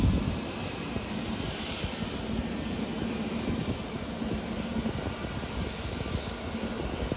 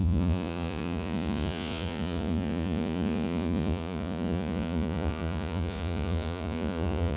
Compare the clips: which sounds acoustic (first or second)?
first